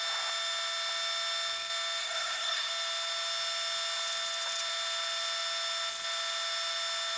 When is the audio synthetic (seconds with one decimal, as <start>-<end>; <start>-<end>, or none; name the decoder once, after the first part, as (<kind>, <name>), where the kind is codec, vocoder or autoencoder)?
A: 2.0-2.7 (codec, SNAC)